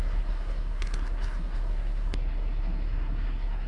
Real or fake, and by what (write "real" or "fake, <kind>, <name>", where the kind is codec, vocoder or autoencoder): fake, codec, SNAC